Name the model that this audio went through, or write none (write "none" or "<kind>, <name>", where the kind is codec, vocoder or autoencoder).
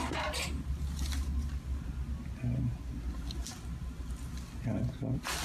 none